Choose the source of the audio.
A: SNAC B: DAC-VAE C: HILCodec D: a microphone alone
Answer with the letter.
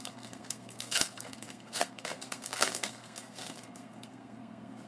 A